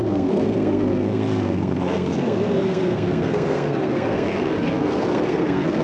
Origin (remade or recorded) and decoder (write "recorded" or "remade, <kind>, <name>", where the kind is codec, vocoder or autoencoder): remade, codec, SNAC